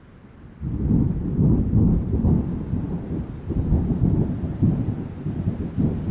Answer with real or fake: real